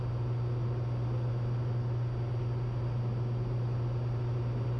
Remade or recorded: recorded